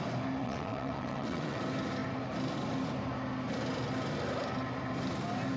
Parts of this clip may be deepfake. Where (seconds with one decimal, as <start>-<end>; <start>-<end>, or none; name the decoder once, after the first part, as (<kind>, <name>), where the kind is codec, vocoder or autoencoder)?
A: 0.4-1.6 (vocoder, WaveNeXt)